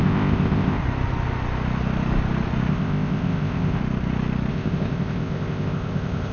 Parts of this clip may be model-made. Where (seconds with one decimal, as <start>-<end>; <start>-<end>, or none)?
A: 0.0-0.8; 2.7-3.8; 4.5-6.3